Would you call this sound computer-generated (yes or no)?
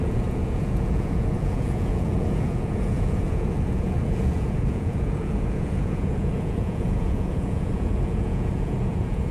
yes